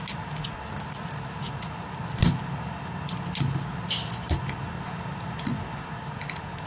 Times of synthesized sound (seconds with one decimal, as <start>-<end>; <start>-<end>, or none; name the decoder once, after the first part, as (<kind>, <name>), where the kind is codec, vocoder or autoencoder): none